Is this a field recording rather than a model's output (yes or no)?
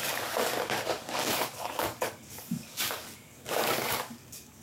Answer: no